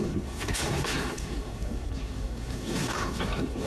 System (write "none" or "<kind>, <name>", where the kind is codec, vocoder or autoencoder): codec, SNAC